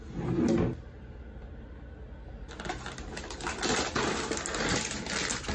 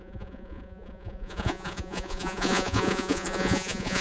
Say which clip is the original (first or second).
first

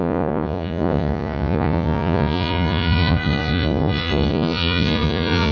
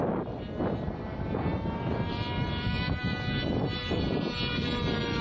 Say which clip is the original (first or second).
second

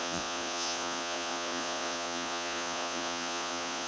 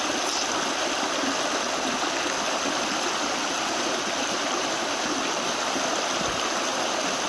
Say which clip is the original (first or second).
second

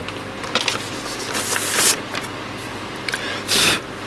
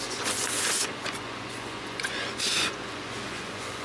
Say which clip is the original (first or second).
first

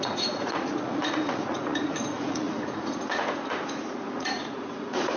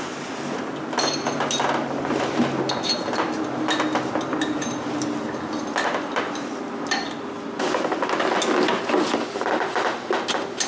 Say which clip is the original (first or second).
second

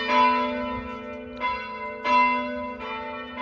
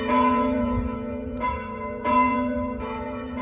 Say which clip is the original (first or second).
first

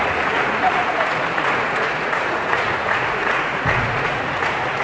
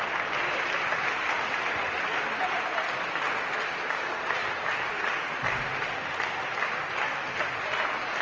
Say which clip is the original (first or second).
second